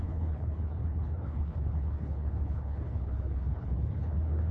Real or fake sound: fake